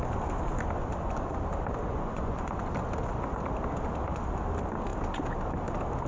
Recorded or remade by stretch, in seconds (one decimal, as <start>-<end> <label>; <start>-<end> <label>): 0.0-1.9 recorded; 1.9-2.5 remade; 2.5-6.1 recorded